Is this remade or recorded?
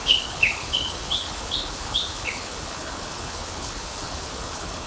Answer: remade